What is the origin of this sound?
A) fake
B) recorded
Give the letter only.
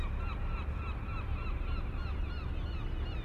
B